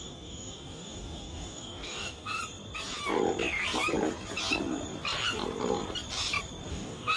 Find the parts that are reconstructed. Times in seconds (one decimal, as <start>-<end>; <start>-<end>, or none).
0.0-2.4; 6.7-7.2